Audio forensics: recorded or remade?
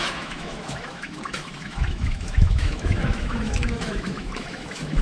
remade